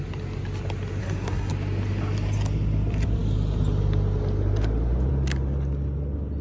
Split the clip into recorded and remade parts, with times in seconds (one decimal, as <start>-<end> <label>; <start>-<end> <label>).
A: 0.0-1.0 recorded; 1.0-1.5 remade; 1.5-6.4 recorded